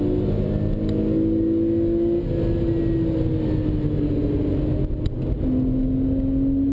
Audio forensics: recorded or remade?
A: recorded